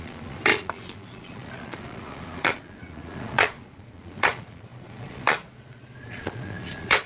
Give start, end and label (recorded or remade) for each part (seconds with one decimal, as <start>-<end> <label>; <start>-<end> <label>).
0.0-7.1 remade